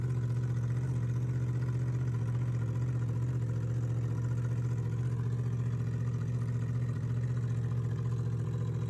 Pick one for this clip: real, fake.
real